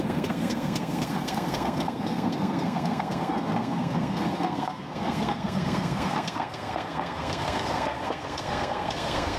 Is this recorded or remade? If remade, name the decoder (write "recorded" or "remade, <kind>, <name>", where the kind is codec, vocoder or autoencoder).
remade, codec, SNAC